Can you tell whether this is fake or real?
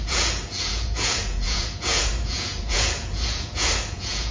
fake